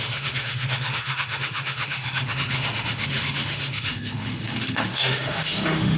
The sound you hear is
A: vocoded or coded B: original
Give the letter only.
A